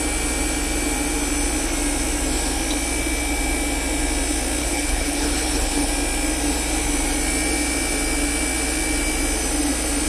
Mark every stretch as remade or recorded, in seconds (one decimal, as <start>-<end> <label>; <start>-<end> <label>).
0.0-4.6 recorded; 4.6-5.9 remade; 5.9-10.1 recorded